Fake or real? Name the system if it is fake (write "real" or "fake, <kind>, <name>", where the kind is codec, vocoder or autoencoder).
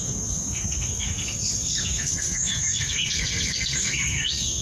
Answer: fake, codec, SNAC